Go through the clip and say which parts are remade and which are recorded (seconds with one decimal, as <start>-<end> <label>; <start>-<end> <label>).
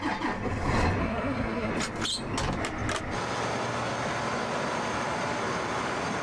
0.0-1.0 recorded; 1.0-1.7 remade; 1.7-6.2 recorded